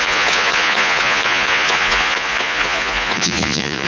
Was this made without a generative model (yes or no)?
no